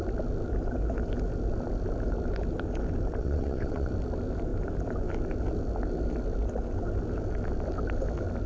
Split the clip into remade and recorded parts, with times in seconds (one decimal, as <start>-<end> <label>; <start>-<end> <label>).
0.0-3.2 recorded; 3.2-3.9 remade; 3.9-8.5 recorded